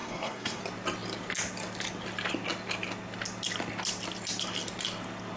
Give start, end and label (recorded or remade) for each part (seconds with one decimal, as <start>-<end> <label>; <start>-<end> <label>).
0.0-0.6 remade; 0.6-5.4 recorded